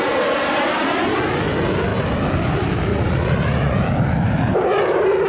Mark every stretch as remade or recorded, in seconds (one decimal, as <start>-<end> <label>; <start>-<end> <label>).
0.0-2.9 recorded; 2.9-3.8 remade; 3.8-5.3 recorded